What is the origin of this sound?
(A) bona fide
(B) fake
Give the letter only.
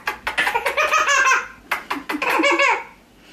A